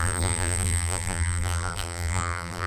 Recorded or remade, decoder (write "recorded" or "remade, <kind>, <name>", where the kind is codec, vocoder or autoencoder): remade, vocoder, BigVGAN v2